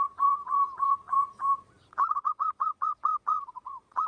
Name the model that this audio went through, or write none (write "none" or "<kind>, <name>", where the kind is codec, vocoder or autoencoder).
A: vocoder, Vocos